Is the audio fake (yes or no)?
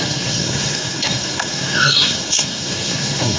yes